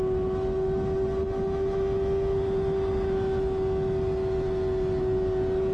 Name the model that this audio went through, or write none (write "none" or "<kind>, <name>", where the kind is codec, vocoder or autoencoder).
none